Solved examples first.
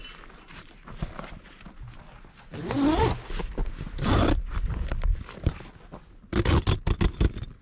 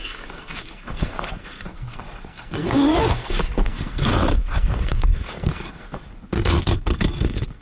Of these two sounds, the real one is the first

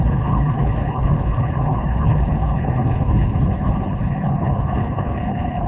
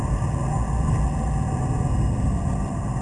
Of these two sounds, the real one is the second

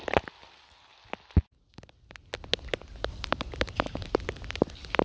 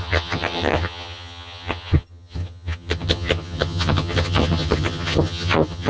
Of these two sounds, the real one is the first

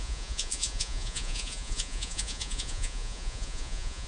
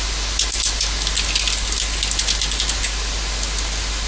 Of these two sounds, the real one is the second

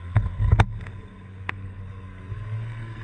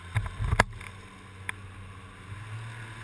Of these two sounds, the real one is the second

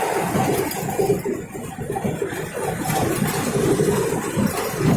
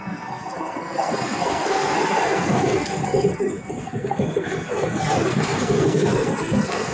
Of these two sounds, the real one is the first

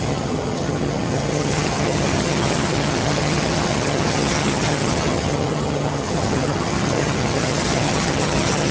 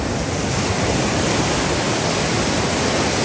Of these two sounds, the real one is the second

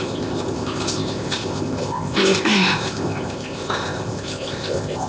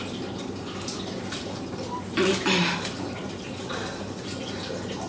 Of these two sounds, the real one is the second